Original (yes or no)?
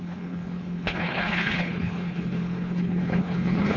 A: no